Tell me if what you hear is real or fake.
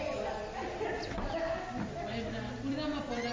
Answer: real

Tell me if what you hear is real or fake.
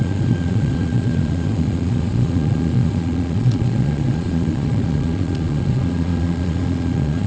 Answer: fake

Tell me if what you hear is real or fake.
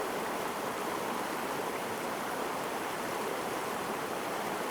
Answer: fake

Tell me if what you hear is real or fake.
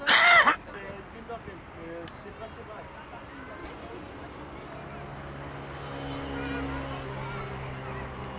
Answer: real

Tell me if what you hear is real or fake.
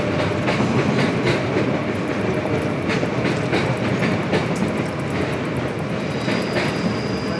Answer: real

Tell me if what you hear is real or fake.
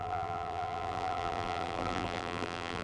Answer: fake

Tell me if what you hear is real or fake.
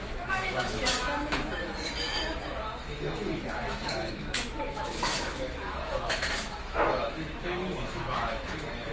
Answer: fake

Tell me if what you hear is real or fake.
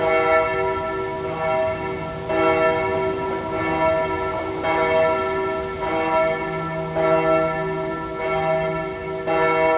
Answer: real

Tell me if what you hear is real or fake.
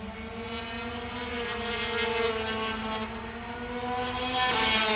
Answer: real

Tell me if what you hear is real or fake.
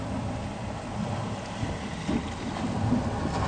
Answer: real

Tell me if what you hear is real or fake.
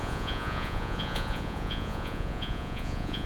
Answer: fake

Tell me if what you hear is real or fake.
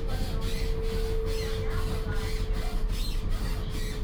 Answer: real